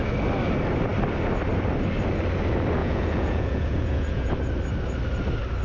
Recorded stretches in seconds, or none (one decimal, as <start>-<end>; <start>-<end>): 0.0-2.8; 4.3-5.6